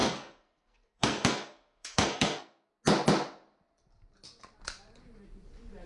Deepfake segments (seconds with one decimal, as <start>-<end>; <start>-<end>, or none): 0.0-2.7